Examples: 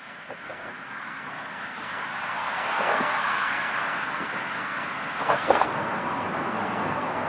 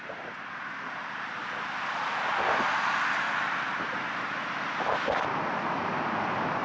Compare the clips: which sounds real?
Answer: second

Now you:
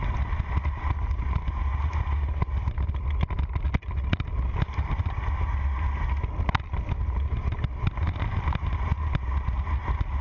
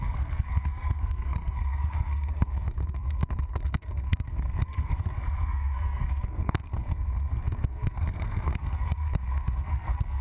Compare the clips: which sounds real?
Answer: first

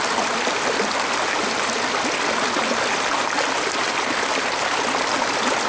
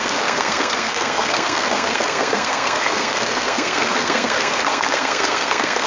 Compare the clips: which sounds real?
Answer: first